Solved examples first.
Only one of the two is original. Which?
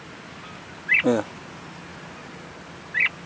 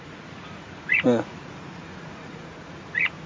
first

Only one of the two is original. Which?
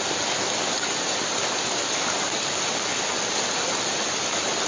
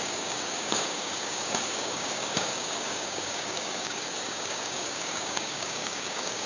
first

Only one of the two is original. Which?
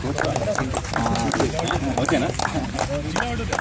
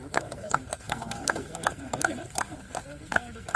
first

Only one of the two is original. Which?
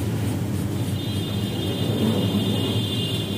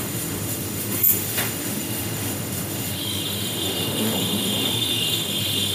first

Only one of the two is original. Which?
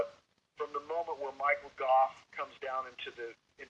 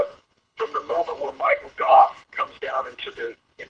first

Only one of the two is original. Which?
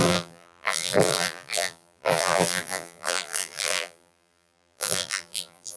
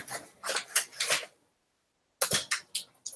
second